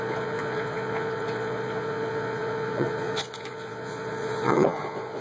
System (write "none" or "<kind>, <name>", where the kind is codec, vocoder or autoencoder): vocoder, Vocos